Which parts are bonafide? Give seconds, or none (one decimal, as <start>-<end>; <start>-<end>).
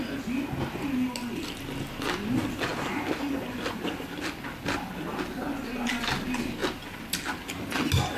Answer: 0.0-8.2